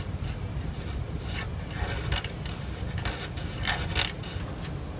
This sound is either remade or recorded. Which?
recorded